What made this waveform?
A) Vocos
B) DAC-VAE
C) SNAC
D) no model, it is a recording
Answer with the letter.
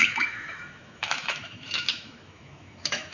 B